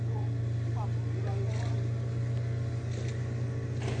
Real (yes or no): yes